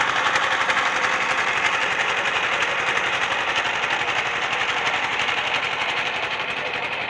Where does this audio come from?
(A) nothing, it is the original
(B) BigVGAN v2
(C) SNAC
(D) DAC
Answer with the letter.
B